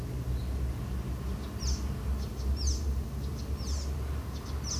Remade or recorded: recorded